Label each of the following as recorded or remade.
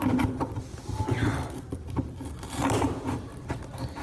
recorded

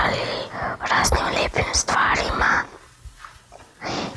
recorded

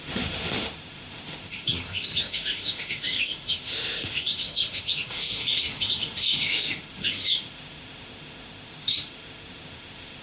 remade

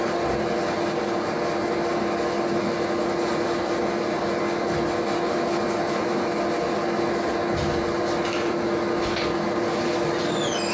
recorded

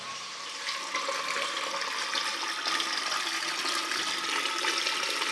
recorded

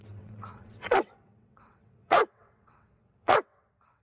remade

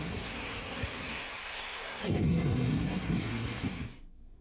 remade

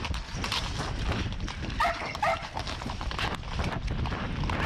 recorded